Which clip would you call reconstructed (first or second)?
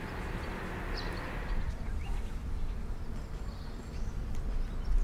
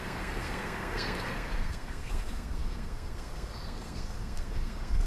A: second